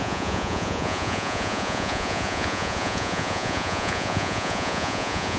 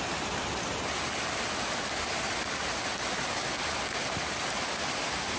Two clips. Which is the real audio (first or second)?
second